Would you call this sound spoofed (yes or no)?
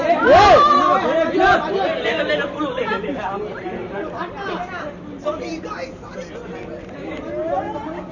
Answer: no